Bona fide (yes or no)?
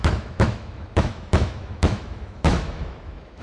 no